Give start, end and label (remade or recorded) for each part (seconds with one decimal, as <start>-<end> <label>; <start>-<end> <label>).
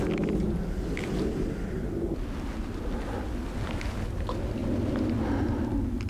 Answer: 0.0-6.1 recorded